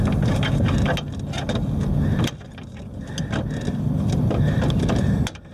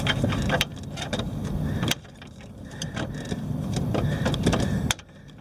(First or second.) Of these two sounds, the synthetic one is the second